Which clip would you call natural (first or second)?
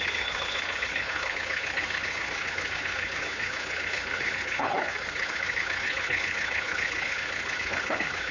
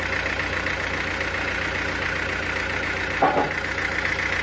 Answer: second